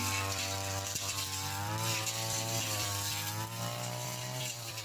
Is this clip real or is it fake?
real